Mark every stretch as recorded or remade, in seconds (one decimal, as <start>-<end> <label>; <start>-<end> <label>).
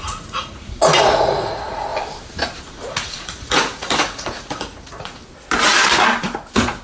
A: 0.0-1.9 remade; 1.9-2.6 recorded; 2.6-5.2 remade; 5.2-6.2 recorded; 6.2-6.8 remade